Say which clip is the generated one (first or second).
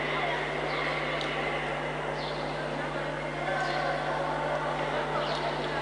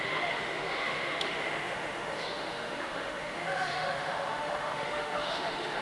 second